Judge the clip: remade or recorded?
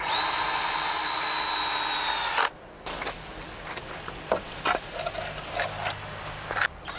recorded